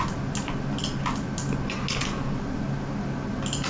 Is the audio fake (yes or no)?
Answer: no